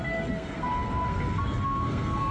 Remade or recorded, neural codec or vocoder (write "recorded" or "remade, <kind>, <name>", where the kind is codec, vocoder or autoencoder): remade, codec, SNAC